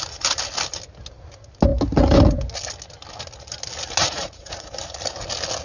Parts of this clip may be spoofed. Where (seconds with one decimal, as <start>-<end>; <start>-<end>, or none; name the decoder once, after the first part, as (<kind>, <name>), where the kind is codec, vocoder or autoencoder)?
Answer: 4.0-4.7 (vocoder, Vocos)